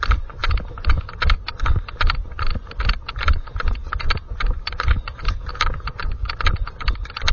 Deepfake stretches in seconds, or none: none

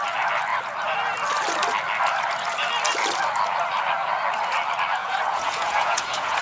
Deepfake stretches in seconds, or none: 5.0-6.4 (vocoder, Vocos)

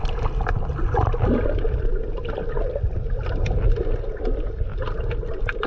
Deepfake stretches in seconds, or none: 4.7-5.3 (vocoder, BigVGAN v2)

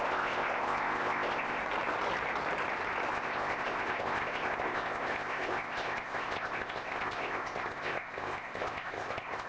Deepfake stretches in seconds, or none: 0.0-1.6 (codec, ZipCodec); 3.1-9.5

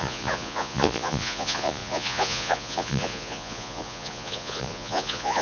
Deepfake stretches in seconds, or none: 0.0-5.4 (vocoder, Vocos)

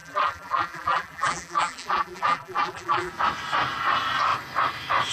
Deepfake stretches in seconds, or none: 0.0-3.1 (vocoder, BigVGAN v2)

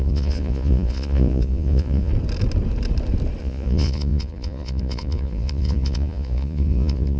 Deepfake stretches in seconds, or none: 0.0-2.1 (vocoder, Vocos); 3.4-7.2